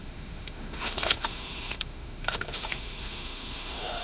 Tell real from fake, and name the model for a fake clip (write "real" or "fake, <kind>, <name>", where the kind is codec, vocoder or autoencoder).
fake, autoencoder, DAC-VAE